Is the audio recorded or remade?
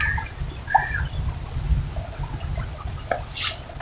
recorded